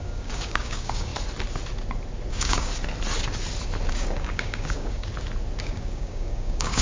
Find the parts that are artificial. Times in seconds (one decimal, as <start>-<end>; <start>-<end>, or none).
0.0-1.1; 2.3-2.7; 3.9-5.1; 5.6-6.8